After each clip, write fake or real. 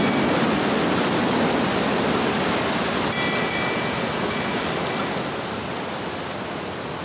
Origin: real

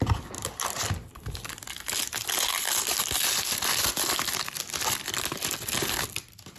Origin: real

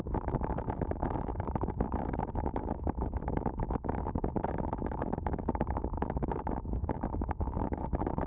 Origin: fake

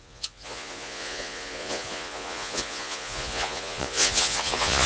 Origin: fake